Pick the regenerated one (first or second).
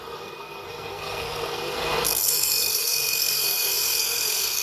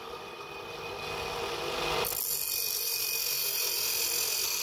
first